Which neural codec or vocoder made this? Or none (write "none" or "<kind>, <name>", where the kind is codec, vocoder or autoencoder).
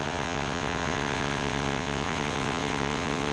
vocoder, WaveNeXt